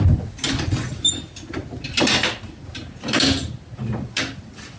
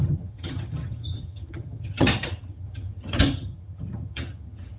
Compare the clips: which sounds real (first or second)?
first